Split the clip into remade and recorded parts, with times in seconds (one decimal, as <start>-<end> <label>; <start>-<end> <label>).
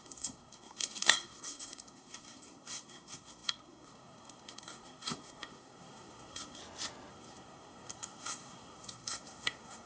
0.0-6.6 remade; 6.6-7.1 recorded; 7.1-9.9 remade